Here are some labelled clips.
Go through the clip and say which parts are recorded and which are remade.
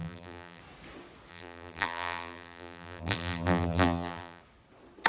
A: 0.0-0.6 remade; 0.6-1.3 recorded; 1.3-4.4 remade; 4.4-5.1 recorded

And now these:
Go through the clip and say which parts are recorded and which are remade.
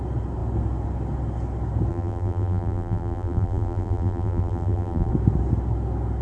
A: 0.0-1.9 recorded; 1.9-5.1 remade; 5.1-6.2 recorded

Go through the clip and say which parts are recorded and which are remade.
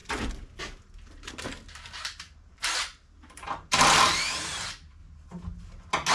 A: 0.0-1.3 recorded; 1.3-5.0 remade; 5.0-6.1 recorded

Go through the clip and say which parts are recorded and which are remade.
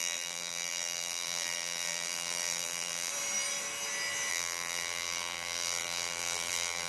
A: 0.0-3.1 remade; 3.1-4.3 recorded; 4.3-6.9 remade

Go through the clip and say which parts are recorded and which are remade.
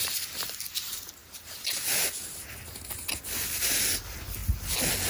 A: 0.0-1.2 remade; 1.2-4.0 recorded; 4.0-4.4 remade; 4.4-5.1 recorded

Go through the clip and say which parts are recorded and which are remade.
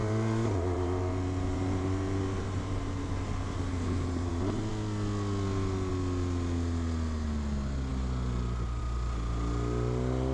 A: 0.0-4.3 remade; 4.3-10.3 recorded